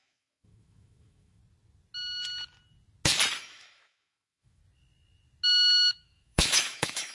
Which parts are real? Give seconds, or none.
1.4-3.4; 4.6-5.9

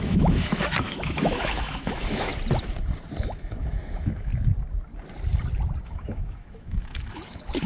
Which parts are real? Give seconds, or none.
2.3-3.2; 4.3-5.8

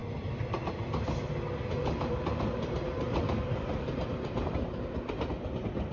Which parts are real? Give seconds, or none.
0.0-1.8; 5.3-5.9

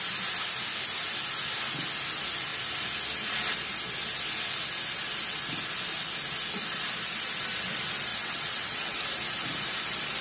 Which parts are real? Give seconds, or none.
0.0-8.1; 9.1-10.2